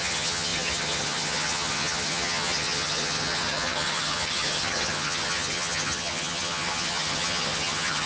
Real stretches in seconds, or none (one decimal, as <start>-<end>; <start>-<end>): none